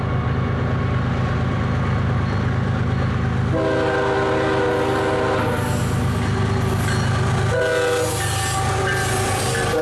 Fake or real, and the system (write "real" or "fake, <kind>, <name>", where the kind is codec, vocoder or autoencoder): real